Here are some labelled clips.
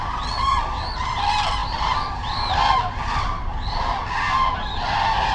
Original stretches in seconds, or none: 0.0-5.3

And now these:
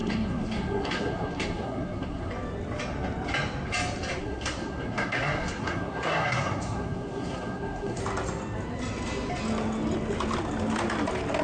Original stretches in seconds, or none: 2.3-4.2; 8.0-11.4

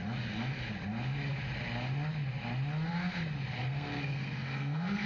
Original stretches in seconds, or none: 0.0-3.6

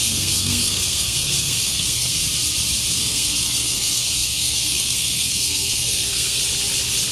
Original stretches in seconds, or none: 2.2-2.9; 6.4-7.1

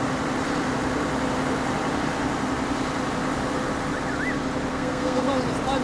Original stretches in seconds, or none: 0.0-4.7; 5.3-5.8

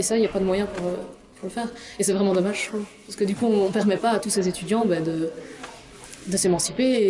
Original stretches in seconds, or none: 0.0-7.1

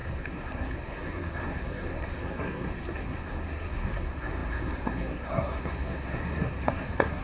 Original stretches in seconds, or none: none